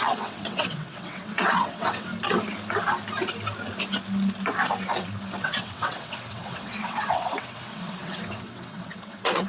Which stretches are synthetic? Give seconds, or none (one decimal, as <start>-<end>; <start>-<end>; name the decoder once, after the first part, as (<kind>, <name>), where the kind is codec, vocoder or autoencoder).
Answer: 0.0-2.1 (vocoder, WaveNeXt); 5.4-9.5